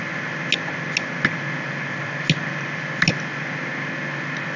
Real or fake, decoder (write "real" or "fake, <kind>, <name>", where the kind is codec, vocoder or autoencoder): real